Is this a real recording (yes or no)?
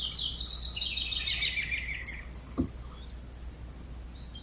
yes